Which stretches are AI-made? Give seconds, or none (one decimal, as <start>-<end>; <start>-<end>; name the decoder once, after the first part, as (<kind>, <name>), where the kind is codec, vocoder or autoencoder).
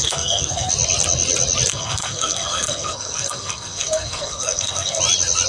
0.0-0.7 (codec, SNAC); 1.7-5.0